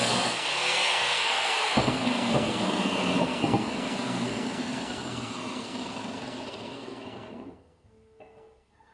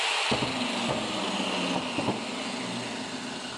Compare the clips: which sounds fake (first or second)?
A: first